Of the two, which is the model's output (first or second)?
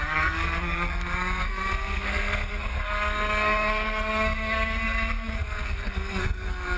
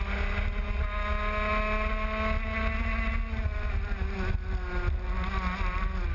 first